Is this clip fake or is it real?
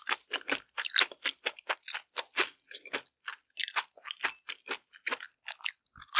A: real